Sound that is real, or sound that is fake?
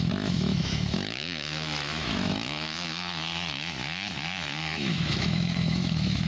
fake